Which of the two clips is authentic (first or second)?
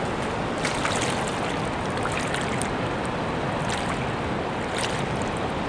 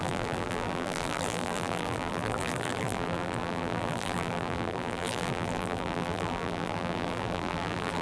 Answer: first